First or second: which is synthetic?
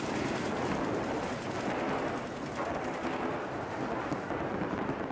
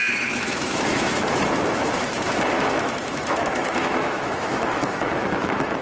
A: second